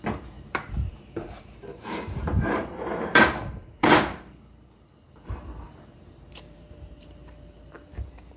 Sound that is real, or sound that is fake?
fake